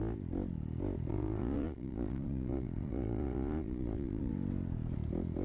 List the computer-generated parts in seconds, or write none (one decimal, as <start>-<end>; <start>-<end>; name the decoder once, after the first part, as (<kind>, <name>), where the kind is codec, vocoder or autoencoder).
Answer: 1.1-4.3 (vocoder, Vocos)